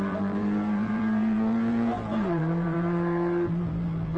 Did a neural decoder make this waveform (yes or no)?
yes